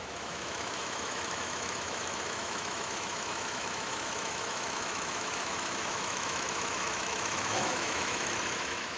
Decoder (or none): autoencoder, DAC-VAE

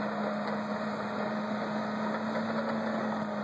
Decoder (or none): none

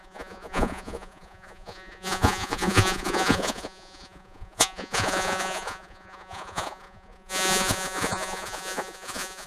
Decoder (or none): vocoder, Vocos